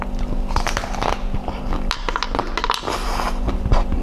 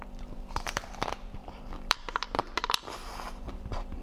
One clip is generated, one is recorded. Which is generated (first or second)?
second